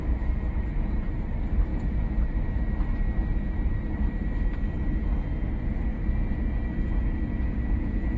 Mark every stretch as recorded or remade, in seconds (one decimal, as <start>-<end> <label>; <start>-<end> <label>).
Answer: 0.0-8.2 recorded